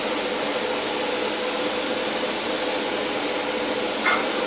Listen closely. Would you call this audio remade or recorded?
recorded